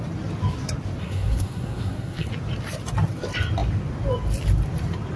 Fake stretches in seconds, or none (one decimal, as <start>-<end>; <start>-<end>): 1.0-2.3